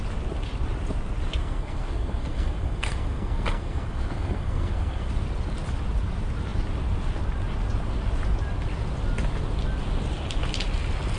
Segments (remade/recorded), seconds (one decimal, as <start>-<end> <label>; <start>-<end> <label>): 0.0-1.4 recorded; 1.4-5.1 remade; 5.1-11.2 recorded